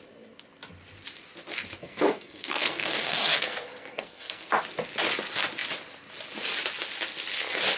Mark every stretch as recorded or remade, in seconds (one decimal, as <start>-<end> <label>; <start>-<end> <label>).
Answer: 0.0-1.8 recorded; 1.8-4.5 remade; 4.5-7.8 recorded